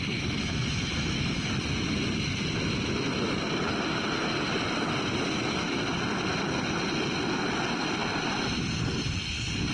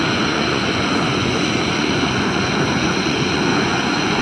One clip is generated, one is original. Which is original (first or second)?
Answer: first